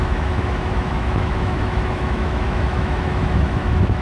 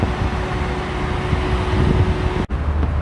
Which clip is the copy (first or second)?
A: first